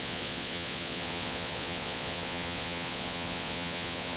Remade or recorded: remade